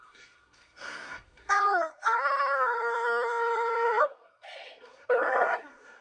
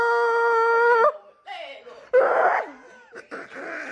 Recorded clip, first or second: second